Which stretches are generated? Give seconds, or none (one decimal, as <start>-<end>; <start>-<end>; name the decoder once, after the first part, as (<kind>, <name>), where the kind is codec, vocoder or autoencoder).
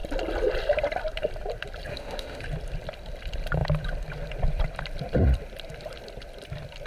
1.9-2.4 (autoencoder, DAC-VAE)